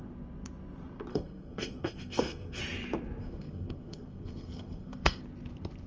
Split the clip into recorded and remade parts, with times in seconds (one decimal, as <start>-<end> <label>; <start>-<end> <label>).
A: 0.0-1.1 recorded; 1.1-2.6 remade; 2.6-3.2 recorded; 3.2-5.2 remade; 5.2-5.9 recorded